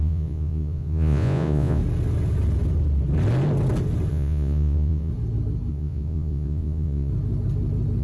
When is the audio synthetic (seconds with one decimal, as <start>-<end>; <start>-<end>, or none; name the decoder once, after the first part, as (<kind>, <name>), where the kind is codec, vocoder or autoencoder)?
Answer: 0.0-1.8 (vocoder, Vocos); 4.1-5.1; 5.7-7.1